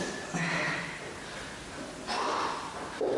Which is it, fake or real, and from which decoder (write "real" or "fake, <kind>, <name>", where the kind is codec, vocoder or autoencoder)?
real